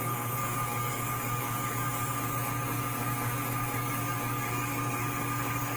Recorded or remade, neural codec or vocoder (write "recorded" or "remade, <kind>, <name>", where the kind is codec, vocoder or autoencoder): remade, codec, DAC